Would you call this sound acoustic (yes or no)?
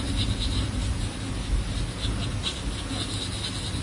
yes